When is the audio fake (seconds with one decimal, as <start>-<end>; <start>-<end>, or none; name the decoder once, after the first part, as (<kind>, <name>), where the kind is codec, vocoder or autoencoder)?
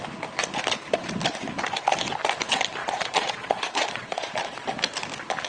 2.8-4.6 (vocoder, Vocos)